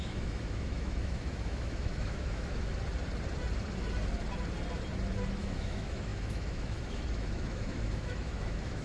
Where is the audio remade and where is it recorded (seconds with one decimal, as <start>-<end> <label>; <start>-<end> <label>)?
0.0-2.7 remade; 2.7-5.4 recorded; 5.4-8.8 remade